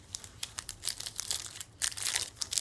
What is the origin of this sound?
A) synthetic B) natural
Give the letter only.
A